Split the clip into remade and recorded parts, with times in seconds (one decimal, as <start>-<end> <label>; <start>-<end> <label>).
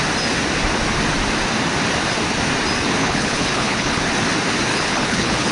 0.0-3.0 recorded; 3.0-4.0 remade; 4.0-4.7 recorded; 4.7-5.5 remade